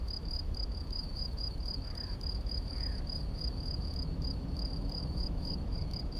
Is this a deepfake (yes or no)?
yes